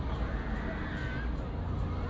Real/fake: real